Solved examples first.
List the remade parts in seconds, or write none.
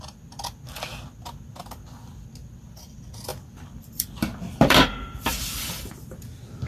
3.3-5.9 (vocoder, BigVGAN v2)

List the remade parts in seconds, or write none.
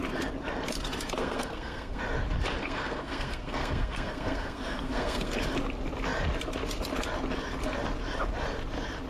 1.2-2.0 (codec, SNAC); 2.6-5.3